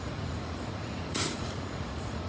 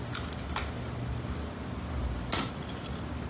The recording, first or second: second